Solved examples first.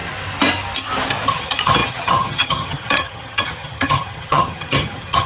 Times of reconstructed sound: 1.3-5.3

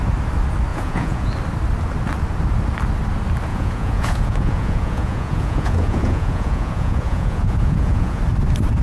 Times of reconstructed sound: 0.7-1.3; 3.5-8.2

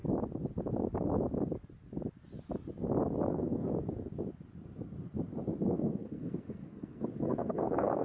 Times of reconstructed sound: 3.3-3.7; 5.7-8.0